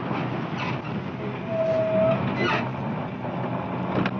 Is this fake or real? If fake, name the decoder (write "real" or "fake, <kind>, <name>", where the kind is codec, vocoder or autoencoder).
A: real